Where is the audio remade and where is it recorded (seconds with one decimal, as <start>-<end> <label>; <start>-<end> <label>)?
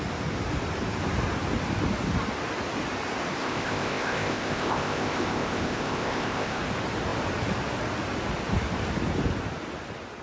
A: 0.0-3.4 recorded; 3.4-6.6 remade; 6.6-10.2 recorded